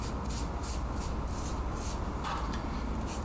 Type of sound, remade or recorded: recorded